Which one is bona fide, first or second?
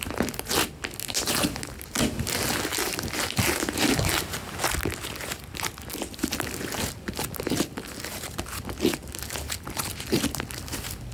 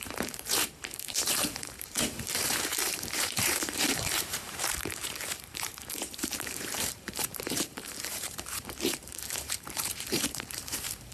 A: first